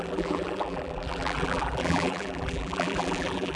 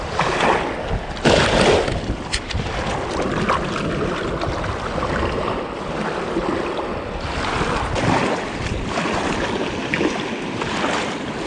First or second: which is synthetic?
first